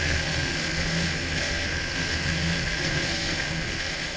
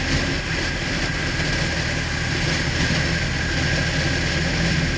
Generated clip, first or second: first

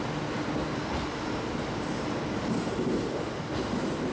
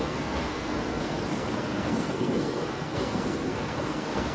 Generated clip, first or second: second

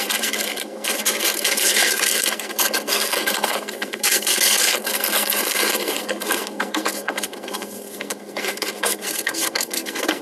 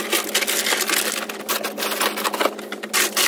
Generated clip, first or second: first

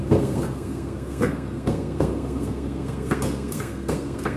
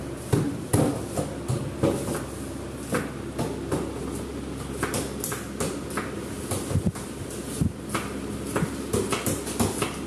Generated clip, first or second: first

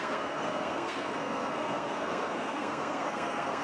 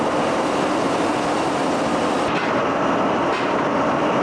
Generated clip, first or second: first